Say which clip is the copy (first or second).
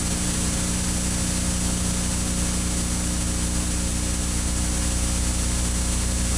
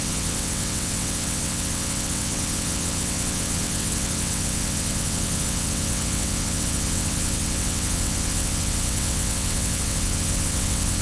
second